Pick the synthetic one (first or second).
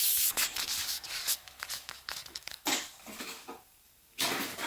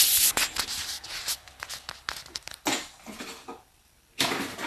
first